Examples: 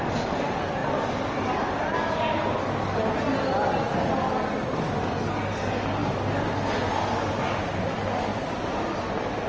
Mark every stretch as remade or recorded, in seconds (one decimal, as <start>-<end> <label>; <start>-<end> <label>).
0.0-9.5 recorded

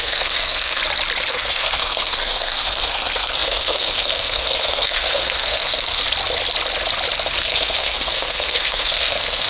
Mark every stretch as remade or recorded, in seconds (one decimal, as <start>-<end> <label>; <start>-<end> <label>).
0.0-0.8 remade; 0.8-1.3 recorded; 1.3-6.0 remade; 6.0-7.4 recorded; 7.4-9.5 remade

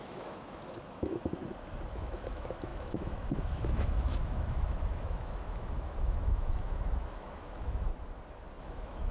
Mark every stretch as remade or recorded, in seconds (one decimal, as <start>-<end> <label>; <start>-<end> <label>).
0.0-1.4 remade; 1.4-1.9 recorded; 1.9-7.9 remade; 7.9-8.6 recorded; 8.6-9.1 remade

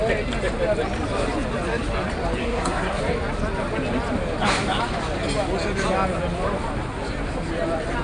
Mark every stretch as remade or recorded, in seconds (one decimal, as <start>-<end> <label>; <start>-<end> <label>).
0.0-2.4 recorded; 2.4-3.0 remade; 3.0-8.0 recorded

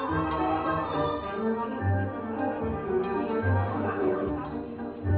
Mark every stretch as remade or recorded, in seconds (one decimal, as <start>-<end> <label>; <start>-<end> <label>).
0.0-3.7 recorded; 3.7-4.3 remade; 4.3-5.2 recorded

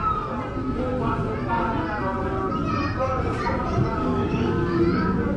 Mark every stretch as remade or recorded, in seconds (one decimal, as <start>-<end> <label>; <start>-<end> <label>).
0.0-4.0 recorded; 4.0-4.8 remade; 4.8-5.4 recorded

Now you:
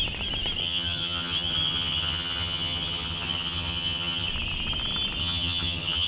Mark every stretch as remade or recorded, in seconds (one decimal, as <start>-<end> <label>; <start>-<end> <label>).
0.0-0.6 recorded; 0.6-4.3 remade; 4.3-5.2 recorded; 5.2-6.1 remade